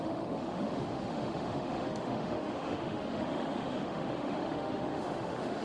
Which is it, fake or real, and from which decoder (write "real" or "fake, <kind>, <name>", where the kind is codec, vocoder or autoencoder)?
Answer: fake, autoencoder, DAC-VAE